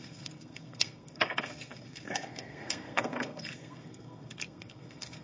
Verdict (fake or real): fake